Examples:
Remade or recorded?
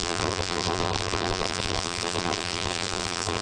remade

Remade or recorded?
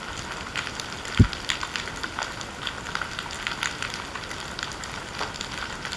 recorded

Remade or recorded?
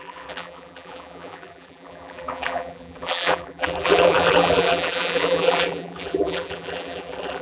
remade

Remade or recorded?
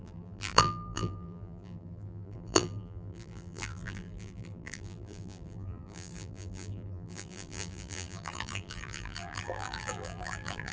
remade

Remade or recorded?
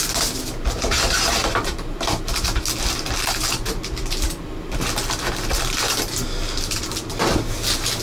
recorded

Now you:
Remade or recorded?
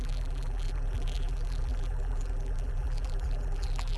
remade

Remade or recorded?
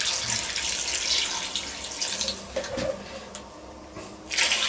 recorded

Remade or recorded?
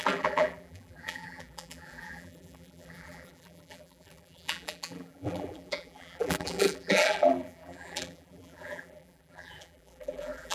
remade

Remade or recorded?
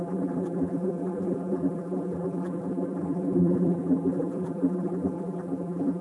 remade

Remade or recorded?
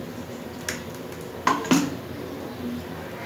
recorded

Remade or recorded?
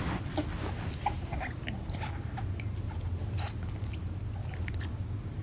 recorded